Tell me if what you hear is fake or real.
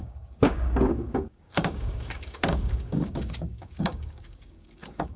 fake